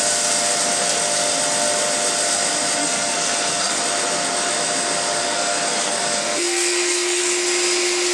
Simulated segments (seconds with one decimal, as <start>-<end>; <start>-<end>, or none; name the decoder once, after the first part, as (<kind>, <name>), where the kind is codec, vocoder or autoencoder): 2.8-3.8 (codec, SNAC); 5.2-7.2